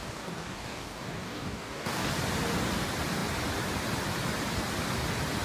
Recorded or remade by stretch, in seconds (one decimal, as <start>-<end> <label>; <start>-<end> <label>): 0.0-2.1 remade; 2.1-5.4 recorded